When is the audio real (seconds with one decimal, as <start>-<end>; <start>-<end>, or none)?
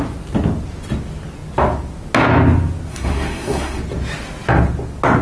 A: 0.0-2.9; 3.8-5.2